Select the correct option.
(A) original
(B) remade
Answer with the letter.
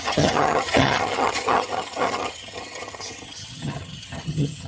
B